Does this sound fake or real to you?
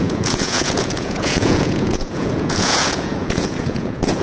fake